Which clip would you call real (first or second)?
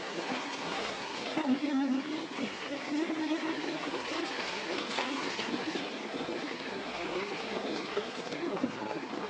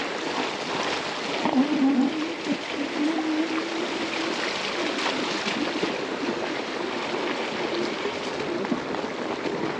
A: second